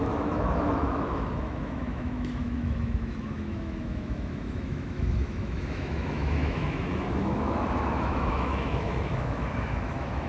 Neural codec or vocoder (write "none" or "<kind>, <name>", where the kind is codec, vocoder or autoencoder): autoencoder, DAC-VAE